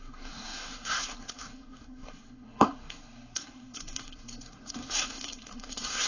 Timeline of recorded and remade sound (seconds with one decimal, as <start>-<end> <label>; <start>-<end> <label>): 0.0-6.1 remade